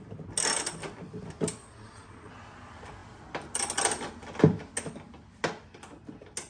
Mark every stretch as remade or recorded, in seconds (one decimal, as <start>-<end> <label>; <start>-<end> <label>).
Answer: 0.0-1.6 recorded; 1.6-2.3 remade; 2.3-6.5 recorded